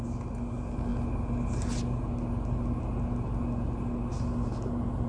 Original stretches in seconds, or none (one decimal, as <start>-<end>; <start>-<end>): 0.0-5.1